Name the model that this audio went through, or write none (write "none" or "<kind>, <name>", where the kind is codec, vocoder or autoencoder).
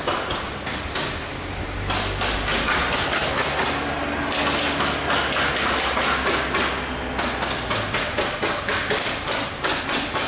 none